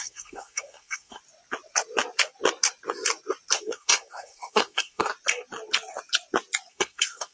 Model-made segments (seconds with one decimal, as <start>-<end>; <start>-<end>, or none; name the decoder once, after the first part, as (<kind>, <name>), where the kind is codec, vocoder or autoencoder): 0.0-1.2 (codec, SNAC); 3.6-5.1; 6.7-7.3